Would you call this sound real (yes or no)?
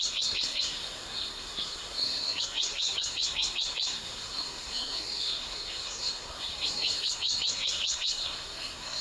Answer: no